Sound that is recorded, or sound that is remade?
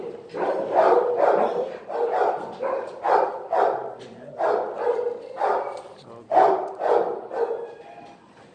recorded